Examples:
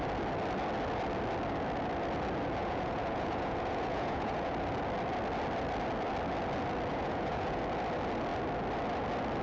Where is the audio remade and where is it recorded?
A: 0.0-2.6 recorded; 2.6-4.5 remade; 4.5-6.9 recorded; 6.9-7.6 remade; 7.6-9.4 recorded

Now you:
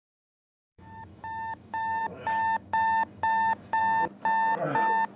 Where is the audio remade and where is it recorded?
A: 0.0-3.8 remade; 3.8-5.2 recorded

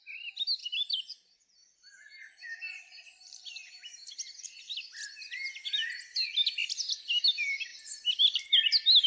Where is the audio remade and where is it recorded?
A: 0.0-0.6 recorded; 0.6-3.4 remade; 3.4-6.6 recorded; 6.6-7.1 remade; 7.1-7.7 recorded; 7.7-8.4 remade; 8.4-9.1 recorded

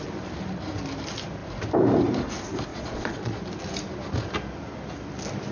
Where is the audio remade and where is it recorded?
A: 0.0-2.7 recorded; 2.7-3.4 remade; 3.4-5.5 recorded

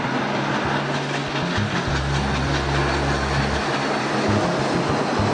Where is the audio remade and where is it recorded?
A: 0.0-5.3 recorded